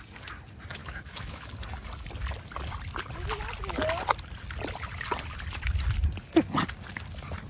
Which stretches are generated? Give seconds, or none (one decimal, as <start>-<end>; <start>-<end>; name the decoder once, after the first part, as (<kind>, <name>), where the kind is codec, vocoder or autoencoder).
0.8-1.5 (autoencoder, DAC-VAE)